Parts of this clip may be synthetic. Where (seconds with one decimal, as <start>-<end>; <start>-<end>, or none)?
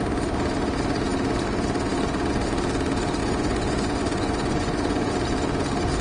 3.2-5.1